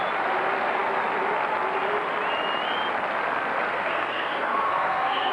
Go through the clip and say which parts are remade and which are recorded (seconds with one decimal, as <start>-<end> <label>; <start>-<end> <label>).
0.0-3.7 recorded; 3.7-5.3 remade